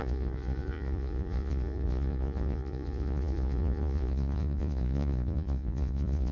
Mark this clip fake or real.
fake